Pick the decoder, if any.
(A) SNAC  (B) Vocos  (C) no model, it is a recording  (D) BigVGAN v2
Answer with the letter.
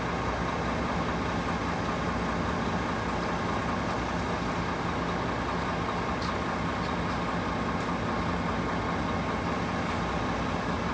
C